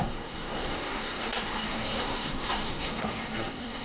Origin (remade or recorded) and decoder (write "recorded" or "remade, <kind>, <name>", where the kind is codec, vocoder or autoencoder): remade, codec, SNAC